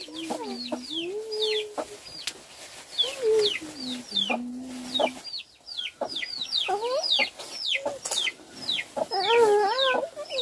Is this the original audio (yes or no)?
yes